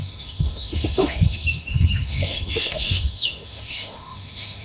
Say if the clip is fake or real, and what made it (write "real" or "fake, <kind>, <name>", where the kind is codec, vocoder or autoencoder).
fake, autoencoder, DAC-VAE